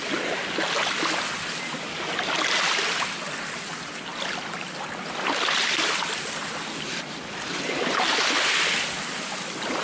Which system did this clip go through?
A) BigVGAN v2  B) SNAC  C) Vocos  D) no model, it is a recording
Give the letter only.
D